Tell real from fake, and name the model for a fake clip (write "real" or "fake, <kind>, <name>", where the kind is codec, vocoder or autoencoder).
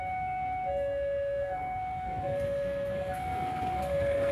fake, codec, SNAC